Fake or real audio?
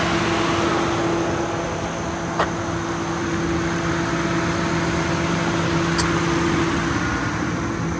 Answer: real